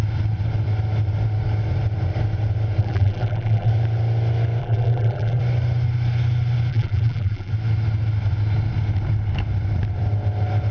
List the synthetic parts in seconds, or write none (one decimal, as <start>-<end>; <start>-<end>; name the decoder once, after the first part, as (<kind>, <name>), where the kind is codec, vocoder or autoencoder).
2.8-3.7 (vocoder, BigVGAN v2); 4.6-5.4; 6.7-7.5